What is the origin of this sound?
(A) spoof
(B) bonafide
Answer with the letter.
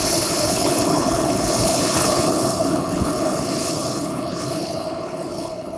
A